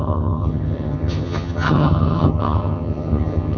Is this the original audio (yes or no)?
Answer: no